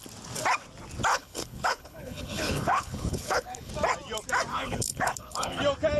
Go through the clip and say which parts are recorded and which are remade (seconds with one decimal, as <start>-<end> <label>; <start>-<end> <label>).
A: 0.0-1.1 recorded; 1.1-3.7 remade; 3.7-4.5 recorded; 4.5-5.6 remade; 5.6-6.0 recorded

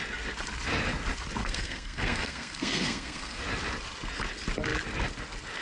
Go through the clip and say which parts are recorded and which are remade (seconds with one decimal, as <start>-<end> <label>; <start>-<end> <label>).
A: 0.0-1.4 recorded; 1.4-3.4 remade; 3.4-5.6 recorded

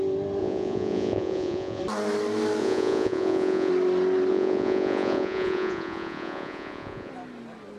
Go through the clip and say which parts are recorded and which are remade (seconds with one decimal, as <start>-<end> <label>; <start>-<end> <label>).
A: 0.0-0.4 recorded; 0.4-1.8 remade; 1.8-2.6 recorded; 2.6-3.7 remade; 3.7-4.3 recorded; 4.3-7.1 remade; 7.1-7.8 recorded

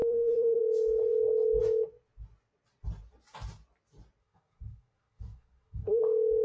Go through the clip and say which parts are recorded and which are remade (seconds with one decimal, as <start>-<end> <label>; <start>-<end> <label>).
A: 0.0-0.6 remade; 0.6-4.2 recorded; 4.2-6.0 remade; 6.0-6.4 recorded